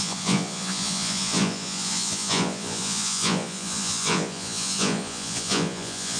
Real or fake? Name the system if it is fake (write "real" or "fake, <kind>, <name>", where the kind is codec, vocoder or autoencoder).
fake, vocoder, Vocos